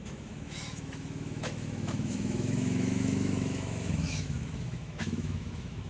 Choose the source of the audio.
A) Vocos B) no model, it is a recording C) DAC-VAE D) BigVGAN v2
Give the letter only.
C